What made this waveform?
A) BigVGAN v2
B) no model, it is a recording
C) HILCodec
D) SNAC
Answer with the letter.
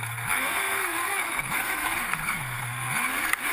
D